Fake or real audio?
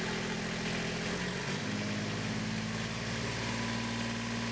real